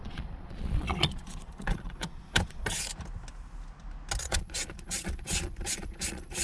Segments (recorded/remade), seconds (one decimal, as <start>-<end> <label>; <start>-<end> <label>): 0.0-2.9 remade; 2.9-4.2 recorded; 4.2-6.4 remade